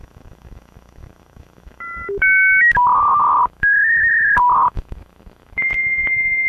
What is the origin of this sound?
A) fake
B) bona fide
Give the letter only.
A